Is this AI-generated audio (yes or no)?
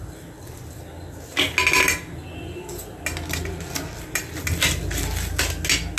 no